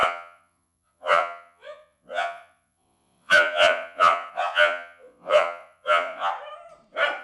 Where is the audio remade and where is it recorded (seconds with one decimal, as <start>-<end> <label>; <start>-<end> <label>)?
0.0-6.3 remade; 6.3-7.2 recorded